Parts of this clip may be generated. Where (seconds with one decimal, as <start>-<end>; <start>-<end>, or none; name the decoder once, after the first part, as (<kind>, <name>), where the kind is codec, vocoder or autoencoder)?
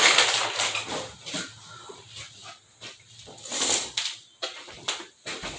none